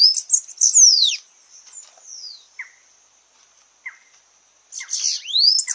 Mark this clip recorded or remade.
recorded